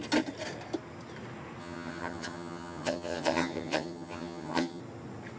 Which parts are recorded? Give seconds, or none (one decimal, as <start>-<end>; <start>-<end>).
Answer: 0.0-1.6; 4.8-5.4